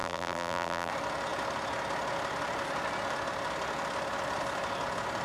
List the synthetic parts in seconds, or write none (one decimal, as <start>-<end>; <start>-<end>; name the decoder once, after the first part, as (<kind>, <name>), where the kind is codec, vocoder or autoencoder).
0.0-0.9 (vocoder, BigVGAN v2)